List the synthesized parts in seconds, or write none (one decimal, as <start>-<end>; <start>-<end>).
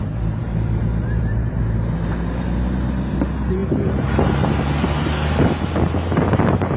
0.4-1.6; 3.6-5.7